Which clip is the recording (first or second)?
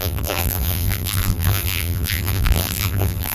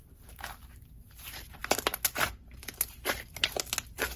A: second